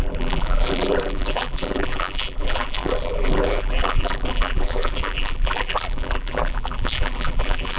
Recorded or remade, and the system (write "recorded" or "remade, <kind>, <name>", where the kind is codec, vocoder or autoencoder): remade, vocoder, BigVGAN v2